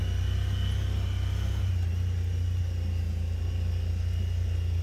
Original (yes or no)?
yes